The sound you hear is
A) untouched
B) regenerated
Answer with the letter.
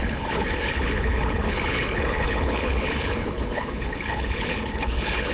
B